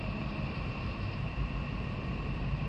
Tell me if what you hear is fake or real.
fake